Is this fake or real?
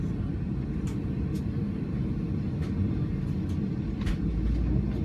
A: real